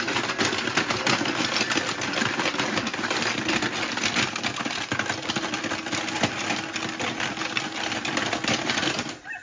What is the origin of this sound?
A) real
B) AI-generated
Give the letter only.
A